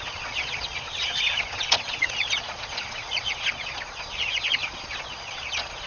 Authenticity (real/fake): fake